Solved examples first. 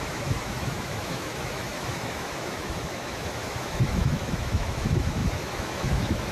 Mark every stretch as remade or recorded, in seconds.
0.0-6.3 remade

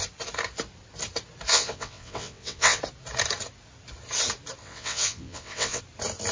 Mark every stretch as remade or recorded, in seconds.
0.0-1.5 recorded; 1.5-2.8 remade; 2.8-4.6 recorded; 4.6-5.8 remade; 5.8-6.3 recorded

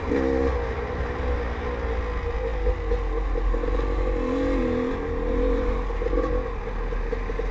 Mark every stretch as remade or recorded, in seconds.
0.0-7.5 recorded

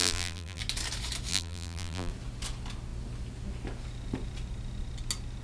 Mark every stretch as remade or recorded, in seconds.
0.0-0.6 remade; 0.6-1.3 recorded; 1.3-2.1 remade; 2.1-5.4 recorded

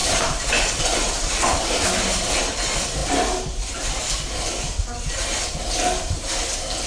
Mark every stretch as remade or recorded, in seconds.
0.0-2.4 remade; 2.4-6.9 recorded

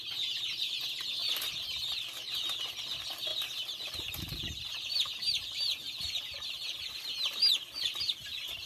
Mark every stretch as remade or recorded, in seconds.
0.0-1.2 recorded; 1.2-2.4 remade; 2.4-3.3 recorded; 3.3-6.9 remade; 6.9-8.7 recorded